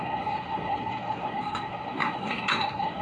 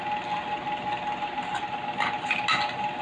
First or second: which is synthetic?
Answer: first